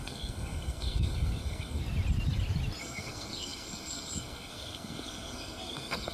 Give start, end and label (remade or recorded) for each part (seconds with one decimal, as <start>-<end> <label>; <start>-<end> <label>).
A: 0.0-1.8 remade; 1.8-2.8 recorded; 2.8-6.1 remade